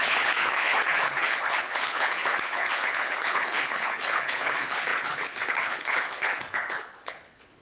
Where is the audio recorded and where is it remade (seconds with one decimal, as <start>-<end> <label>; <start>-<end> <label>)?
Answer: 0.0-7.6 remade